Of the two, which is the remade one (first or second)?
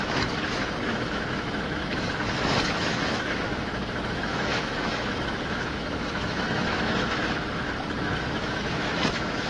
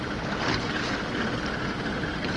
first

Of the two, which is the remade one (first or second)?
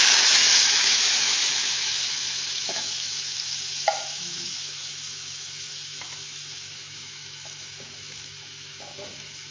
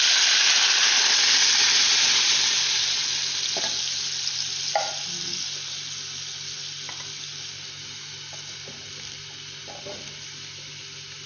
first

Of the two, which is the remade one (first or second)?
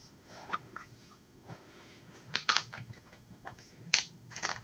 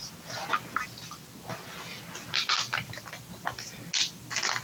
first